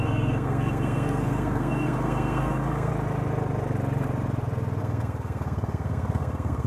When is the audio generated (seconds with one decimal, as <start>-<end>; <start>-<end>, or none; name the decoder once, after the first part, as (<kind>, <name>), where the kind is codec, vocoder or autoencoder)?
0.0-2.9 (codec, SNAC); 4.8-6.7